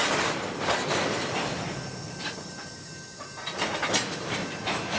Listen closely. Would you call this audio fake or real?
real